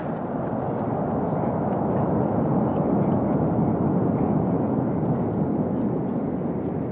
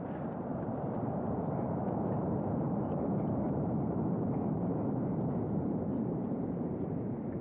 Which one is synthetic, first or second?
second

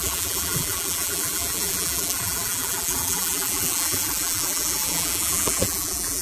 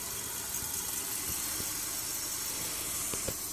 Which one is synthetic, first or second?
first